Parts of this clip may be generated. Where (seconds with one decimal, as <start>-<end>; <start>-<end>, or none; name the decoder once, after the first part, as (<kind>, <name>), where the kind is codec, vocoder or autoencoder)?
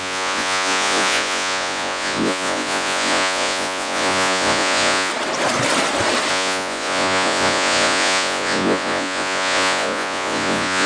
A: 0.0-5.1 (vocoder, Vocos); 6.3-10.9